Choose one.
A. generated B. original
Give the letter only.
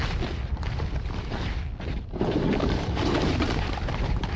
B